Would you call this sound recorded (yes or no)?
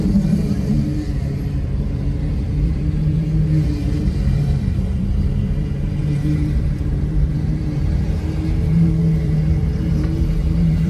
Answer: no